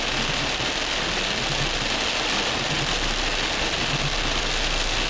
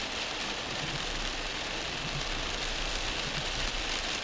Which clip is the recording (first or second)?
first